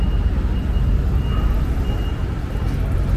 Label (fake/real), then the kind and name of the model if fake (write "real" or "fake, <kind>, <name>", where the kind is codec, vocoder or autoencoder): real